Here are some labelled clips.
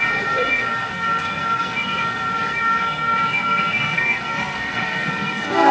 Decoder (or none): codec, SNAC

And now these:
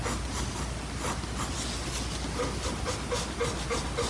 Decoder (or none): none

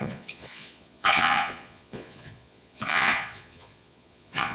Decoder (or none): vocoder, Vocos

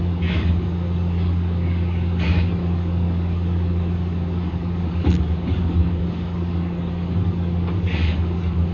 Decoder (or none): codec, DAC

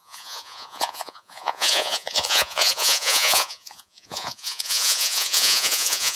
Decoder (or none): vocoder, Vocos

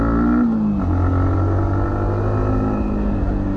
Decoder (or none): none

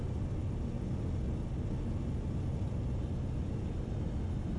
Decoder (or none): none